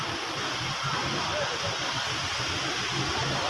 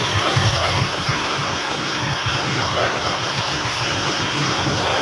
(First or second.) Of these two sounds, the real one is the first